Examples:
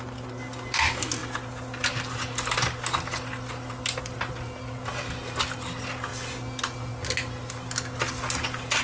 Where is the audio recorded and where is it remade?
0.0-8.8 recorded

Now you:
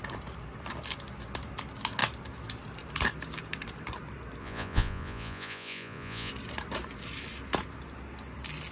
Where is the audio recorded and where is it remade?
0.0-4.4 recorded; 4.4-6.3 remade; 6.3-8.7 recorded

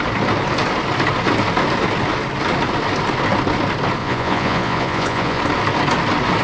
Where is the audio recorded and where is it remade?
0.0-4.0 recorded; 4.0-5.4 remade; 5.4-6.4 recorded